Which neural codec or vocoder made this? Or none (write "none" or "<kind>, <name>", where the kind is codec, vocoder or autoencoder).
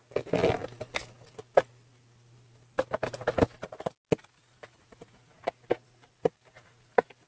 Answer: none